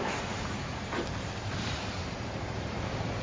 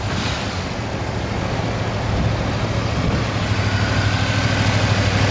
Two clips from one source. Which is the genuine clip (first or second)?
second